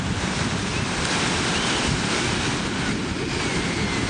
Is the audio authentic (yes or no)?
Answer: yes